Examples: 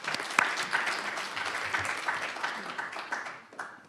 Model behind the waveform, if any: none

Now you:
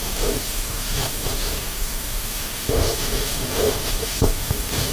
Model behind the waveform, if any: codec, DAC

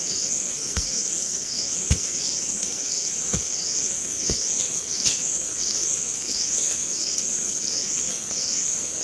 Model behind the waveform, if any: codec, SNAC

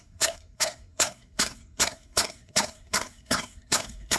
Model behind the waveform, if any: codec, SNAC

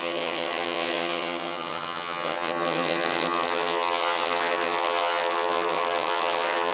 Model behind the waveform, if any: vocoder, HiFi-GAN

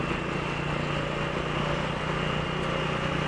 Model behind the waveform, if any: none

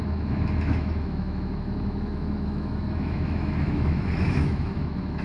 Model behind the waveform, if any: autoencoder, DAC-VAE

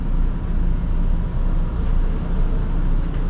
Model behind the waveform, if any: none